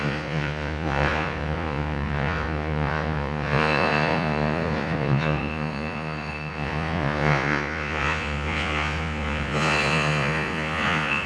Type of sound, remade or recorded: remade